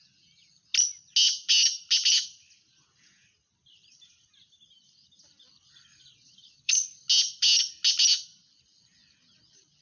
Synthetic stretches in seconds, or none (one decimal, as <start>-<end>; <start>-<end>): 5.9-7.1